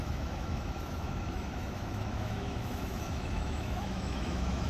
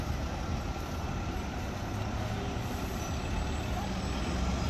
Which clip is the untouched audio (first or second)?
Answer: second